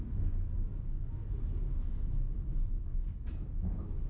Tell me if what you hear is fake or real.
real